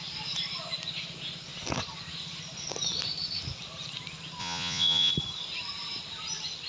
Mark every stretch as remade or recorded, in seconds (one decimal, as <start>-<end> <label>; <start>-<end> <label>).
0.0-4.4 recorded; 4.4-5.1 remade; 5.1-6.7 recorded